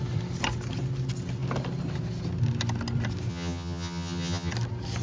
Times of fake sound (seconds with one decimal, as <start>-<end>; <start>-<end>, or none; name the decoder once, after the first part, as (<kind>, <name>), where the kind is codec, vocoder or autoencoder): 3.3-4.5 (vocoder, HiFi-GAN)